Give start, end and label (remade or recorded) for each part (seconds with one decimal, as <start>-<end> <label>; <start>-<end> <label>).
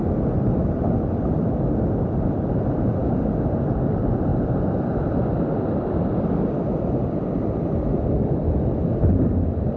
0.0-9.8 recorded